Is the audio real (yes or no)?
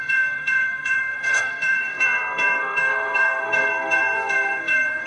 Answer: no